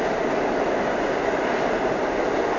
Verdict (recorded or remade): recorded